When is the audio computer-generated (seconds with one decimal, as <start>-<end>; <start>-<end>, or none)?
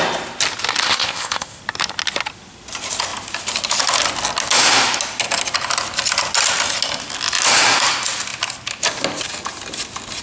0.8-1.6